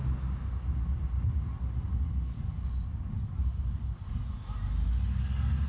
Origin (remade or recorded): recorded